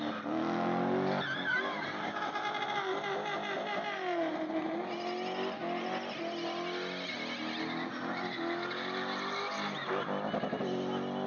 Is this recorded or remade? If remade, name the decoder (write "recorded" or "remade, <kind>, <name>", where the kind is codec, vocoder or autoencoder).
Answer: recorded